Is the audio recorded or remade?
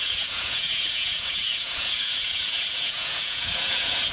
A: remade